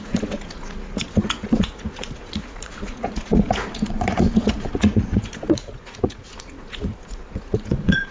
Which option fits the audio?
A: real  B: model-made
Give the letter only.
B